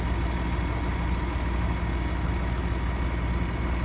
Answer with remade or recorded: recorded